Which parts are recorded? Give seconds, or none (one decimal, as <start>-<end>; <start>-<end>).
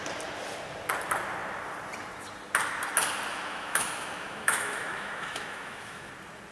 0.0-3.3; 6.1-6.5